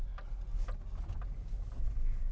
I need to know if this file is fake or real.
real